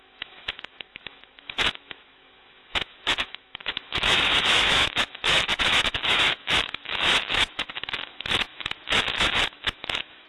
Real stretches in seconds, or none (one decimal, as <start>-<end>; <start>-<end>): none